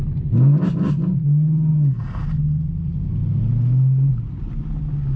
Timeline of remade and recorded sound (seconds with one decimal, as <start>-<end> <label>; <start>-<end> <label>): 0.0-5.2 recorded